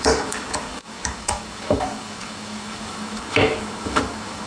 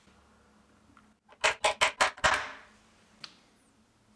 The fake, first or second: first